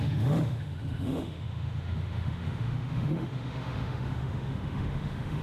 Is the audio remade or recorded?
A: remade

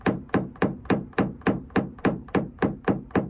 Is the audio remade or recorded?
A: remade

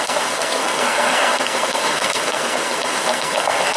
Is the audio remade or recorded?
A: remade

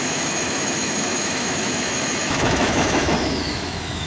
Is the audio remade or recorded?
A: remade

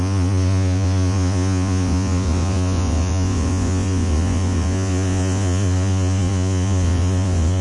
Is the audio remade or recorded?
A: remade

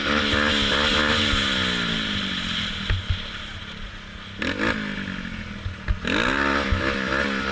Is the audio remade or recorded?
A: recorded